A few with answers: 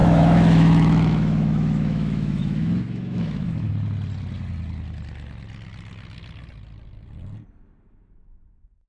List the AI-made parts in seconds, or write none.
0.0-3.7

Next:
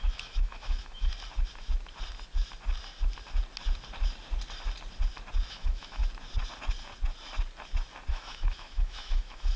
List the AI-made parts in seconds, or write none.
0.0-1.1; 5.5-6.0; 8.1-9.6

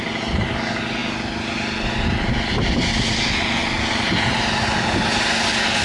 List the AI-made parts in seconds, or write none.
none

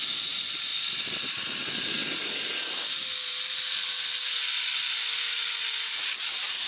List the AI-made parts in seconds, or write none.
none

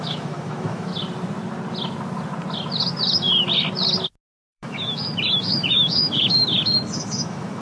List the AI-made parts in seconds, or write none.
0.0-0.9; 4.3-7.6

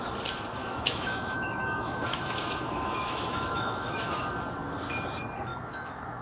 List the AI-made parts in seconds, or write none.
0.6-4.3; 5.5-6.2

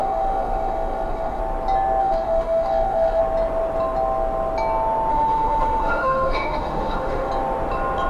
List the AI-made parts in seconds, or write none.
0.0-1.4; 2.0-3.2; 5.1-7.3